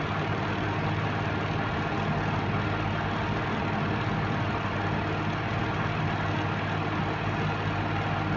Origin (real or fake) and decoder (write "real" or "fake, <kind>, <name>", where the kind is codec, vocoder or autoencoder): real